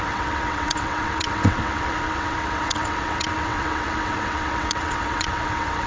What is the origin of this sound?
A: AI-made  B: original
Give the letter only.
A